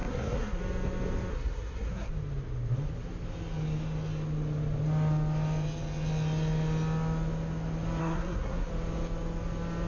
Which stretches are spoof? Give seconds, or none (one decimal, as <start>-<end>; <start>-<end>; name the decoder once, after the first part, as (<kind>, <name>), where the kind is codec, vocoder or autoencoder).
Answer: 0.0-0.6 (codec, SNAC); 1.3-2.1; 8.0-8.7